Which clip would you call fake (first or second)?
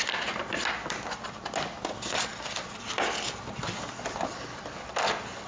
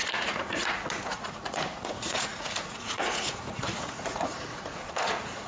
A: second